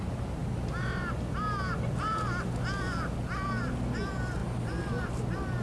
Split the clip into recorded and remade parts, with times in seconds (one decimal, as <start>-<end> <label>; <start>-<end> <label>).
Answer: 0.0-4.4 recorded; 4.4-5.1 remade; 5.1-5.6 recorded